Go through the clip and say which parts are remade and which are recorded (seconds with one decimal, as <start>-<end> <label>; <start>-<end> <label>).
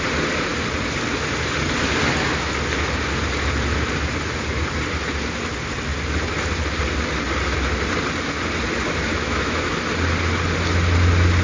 0.0-9.1 recorded; 9.1-9.7 remade; 9.7-11.4 recorded